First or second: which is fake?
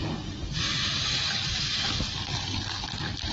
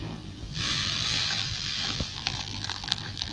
second